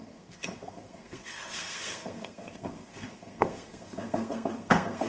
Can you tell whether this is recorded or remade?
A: remade